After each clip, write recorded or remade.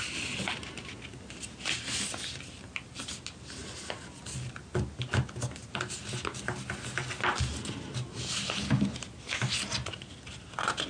recorded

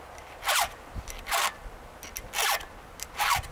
recorded